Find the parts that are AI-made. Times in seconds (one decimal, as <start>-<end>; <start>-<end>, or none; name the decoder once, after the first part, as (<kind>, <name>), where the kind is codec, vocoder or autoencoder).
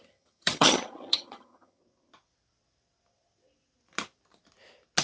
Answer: 0.0-1.8 (vocoder, HiFi-GAN)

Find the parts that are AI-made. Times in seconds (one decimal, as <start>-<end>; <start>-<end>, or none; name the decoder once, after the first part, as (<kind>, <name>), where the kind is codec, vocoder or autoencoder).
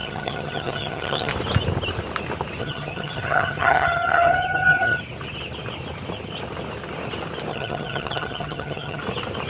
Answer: 0.0-1.3 (vocoder, HiFi-GAN); 2.6-5.0; 7.5-9.0